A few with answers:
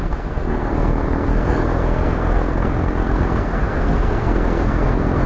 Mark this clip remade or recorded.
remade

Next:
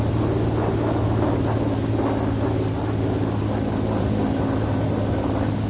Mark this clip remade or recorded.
recorded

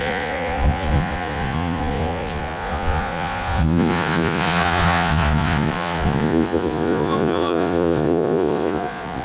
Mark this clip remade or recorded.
remade